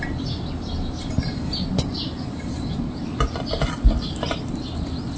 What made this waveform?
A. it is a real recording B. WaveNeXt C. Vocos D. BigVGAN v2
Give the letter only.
A